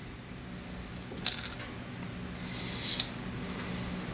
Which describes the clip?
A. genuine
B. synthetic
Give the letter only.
A